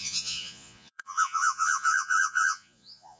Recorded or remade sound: remade